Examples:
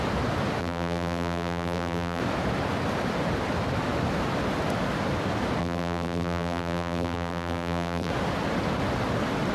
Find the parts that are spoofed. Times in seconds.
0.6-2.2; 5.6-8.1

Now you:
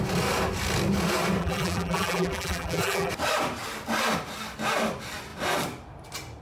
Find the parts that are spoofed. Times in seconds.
1.4-3.1

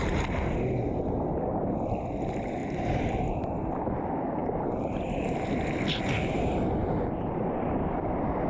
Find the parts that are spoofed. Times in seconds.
2.6-3.4; 4.4-5.2; 6.8-7.4

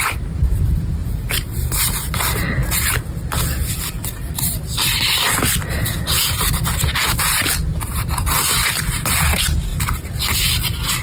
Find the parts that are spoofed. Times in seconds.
0.0-2.6; 7.2-11.0

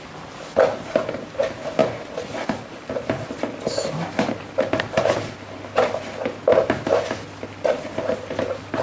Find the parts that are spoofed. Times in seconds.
none

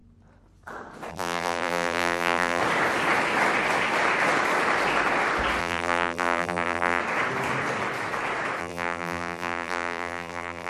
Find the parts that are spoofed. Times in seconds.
1.1-2.6; 5.6-7.0; 8.6-10.7

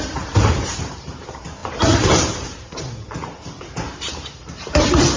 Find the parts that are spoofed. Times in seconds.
0.0-5.2

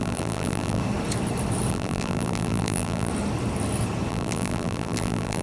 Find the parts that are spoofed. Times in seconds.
0.0-0.8; 1.7-3.1; 4.1-5.4